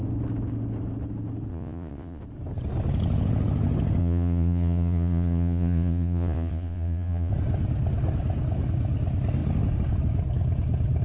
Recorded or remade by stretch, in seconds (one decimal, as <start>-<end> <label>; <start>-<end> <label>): 0.0-1.5 recorded; 1.5-2.2 remade; 2.2-4.0 recorded; 4.0-7.3 remade; 7.3-11.0 recorded